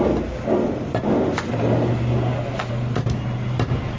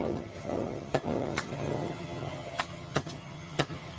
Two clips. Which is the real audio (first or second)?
first